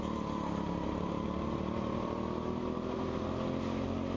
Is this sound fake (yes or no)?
no